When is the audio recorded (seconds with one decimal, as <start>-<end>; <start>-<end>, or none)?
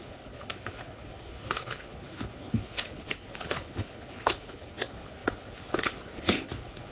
none